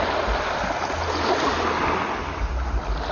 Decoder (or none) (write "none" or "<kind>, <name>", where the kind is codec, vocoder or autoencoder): none